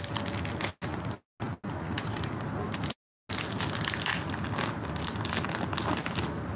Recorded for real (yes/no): yes